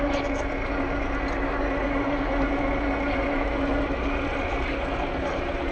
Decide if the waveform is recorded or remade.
recorded